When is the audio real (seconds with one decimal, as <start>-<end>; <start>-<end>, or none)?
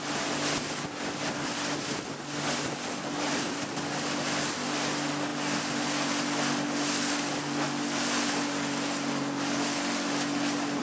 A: 0.0-10.8